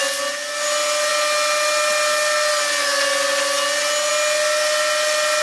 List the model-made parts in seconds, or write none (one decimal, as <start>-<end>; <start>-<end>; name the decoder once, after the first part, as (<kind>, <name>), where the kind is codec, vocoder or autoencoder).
none